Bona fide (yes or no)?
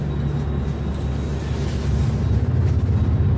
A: yes